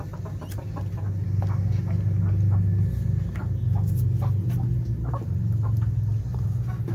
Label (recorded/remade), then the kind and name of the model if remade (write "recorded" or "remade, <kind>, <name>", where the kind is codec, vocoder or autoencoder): recorded